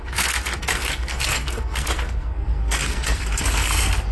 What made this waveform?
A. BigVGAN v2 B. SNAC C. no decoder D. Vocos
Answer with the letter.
B